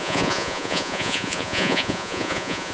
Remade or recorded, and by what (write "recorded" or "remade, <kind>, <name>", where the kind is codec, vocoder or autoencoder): remade, vocoder, Vocos